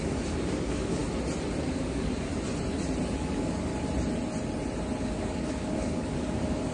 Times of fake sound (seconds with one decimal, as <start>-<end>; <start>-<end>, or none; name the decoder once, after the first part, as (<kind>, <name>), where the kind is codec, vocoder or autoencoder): 0.0-1.0 (codec, DAC); 1.7-2.3; 3.2-3.7; 5.0-6.7